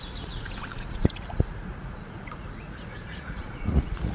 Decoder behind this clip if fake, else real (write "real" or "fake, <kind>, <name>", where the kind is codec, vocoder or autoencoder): fake, vocoder, Vocos